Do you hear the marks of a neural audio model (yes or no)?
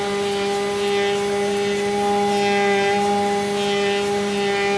no